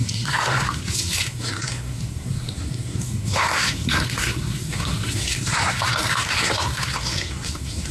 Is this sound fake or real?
fake